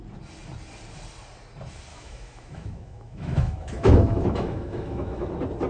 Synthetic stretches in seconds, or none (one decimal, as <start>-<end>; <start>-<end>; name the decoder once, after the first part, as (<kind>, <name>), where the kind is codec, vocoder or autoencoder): 1.9-5.3 (autoencoder, DAC-VAE)